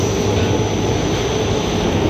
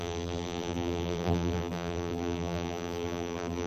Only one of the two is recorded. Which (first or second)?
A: first